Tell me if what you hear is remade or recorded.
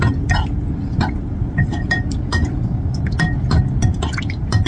recorded